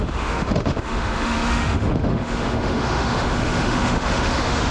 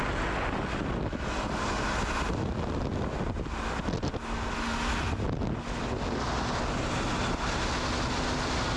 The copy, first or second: first